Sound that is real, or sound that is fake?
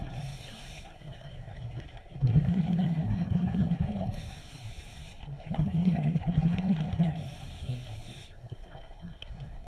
fake